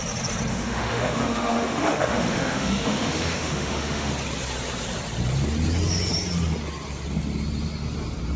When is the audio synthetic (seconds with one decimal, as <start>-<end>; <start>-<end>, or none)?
0.5-4.1

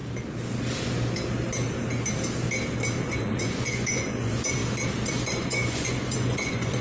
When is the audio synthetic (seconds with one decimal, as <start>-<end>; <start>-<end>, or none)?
3.0-4.6; 5.1-6.8

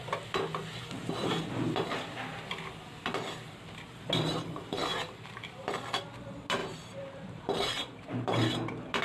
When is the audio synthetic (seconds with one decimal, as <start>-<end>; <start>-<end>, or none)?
4.9-5.7; 6.6-8.5

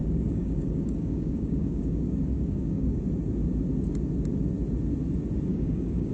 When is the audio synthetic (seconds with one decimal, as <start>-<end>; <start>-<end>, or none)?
0.0-3.0; 5.5-6.1

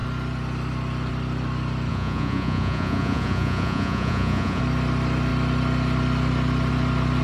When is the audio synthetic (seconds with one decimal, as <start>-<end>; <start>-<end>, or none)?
1.9-4.6

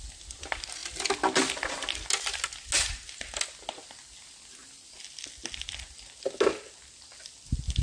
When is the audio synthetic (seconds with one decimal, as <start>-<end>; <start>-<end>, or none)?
none

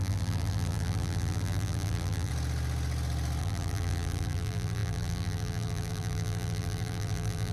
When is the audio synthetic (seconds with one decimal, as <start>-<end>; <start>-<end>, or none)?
0.0-2.3; 3.4-7.5

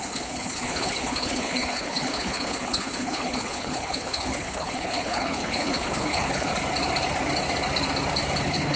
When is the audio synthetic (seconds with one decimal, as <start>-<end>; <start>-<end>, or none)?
0.0-6.5; 8.4-8.8